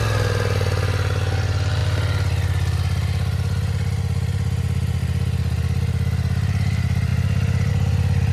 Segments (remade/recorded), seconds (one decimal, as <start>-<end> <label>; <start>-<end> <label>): 0.0-8.3 recorded